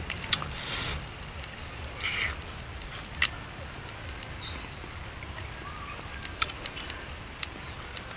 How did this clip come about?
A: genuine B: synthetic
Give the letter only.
A